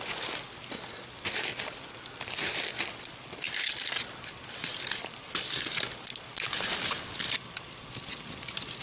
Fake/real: real